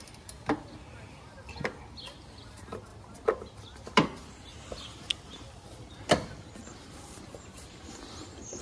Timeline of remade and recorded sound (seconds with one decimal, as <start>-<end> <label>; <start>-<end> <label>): 0.0-8.6 recorded